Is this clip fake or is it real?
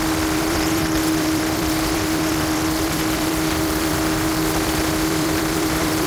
fake